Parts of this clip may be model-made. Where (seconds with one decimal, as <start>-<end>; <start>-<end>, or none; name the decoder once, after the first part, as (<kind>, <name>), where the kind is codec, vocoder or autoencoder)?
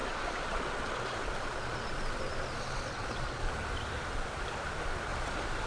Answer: 0.0-3.4 (vocoder, Vocos); 5.1-5.7